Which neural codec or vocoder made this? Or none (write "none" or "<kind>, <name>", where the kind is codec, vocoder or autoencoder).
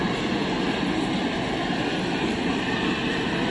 none